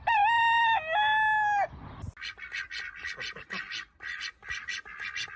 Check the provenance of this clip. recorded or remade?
recorded